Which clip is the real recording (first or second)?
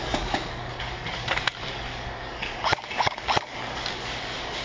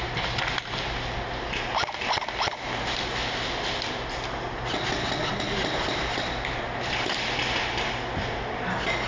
second